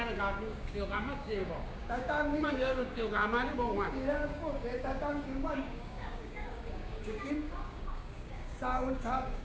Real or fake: fake